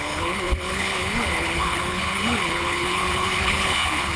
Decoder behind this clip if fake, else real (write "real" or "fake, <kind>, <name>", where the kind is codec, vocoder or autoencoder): fake, codec, HILCodec